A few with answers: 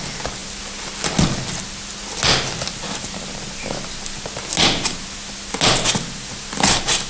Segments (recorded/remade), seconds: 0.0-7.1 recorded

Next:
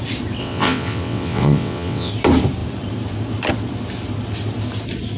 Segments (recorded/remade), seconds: 0.0-0.4 recorded; 0.4-2.1 remade; 2.1-5.2 recorded